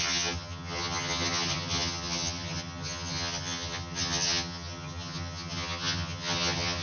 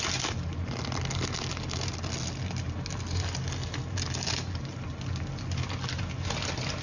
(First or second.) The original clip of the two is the second